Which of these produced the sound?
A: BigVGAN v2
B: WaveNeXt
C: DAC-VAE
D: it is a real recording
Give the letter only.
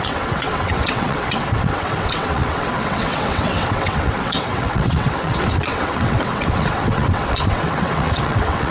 B